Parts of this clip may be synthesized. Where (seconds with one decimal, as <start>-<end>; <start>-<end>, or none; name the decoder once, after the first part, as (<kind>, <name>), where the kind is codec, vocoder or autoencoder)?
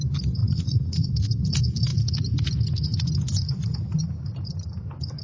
0.4-1.1 (vocoder, Vocos)